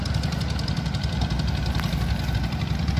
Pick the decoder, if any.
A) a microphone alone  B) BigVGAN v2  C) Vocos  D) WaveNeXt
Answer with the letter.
A